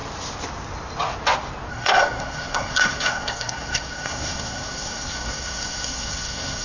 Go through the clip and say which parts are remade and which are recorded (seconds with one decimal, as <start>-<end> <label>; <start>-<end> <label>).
0.0-1.7 recorded; 1.7-6.6 remade